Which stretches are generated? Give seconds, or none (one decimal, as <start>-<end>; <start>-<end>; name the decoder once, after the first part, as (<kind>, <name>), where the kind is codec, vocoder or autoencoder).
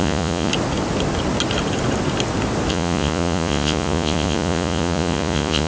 0.0-0.5 (vocoder, Vocos); 2.7-5.7